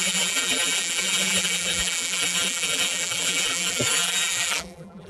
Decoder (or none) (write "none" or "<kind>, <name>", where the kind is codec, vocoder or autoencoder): vocoder, BigVGAN v2